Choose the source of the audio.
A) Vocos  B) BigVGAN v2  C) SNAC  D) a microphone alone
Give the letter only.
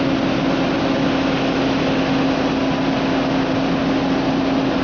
D